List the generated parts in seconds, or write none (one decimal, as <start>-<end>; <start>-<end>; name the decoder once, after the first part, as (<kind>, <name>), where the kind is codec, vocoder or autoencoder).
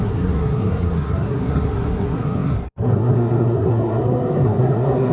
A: 0.0-5.1 (codec, SNAC)